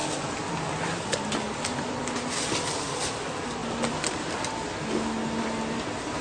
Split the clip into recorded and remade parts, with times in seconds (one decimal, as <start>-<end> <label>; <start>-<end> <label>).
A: 0.0-6.2 recorded

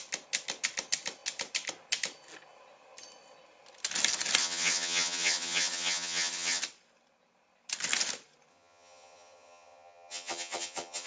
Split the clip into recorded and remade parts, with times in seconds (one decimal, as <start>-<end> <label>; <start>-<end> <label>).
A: 0.0-4.4 recorded; 4.4-6.6 remade; 6.6-8.5 recorded; 8.5-11.1 remade

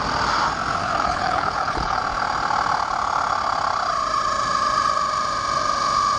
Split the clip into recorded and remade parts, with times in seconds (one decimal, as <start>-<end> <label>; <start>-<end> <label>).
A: 0.0-0.8 recorded; 0.8-2.0 remade; 2.0-6.2 recorded

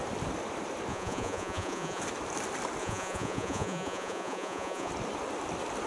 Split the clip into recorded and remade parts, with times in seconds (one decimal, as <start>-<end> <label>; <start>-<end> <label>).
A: 0.0-0.9 recorded; 0.9-2.0 remade; 2.0-2.8 recorded; 2.8-4.9 remade; 4.9-5.9 recorded

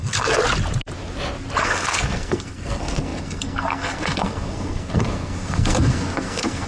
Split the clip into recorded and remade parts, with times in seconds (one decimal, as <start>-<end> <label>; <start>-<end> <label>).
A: 0.0-0.4 remade; 0.4-1.6 recorded; 1.6-6.7 remade

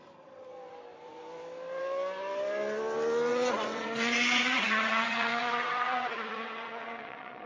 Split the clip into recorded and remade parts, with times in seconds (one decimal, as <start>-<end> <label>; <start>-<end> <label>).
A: 0.0-3.3 recorded; 3.3-7.5 remade

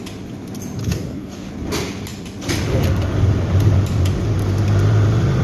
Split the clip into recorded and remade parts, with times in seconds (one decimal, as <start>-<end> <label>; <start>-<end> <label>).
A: 0.0-0.8 recorded; 0.8-1.5 remade; 1.5-5.4 recorded

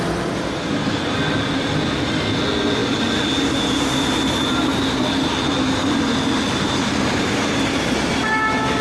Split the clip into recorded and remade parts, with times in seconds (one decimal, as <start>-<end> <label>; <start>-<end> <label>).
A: 0.0-8.8 recorded